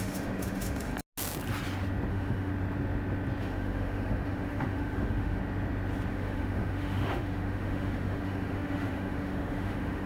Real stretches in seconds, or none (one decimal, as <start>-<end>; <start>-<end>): 0.9-2.1; 2.5-3.4; 5.4-6.1